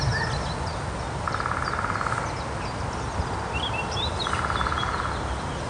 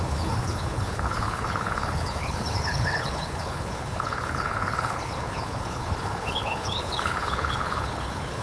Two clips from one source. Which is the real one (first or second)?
first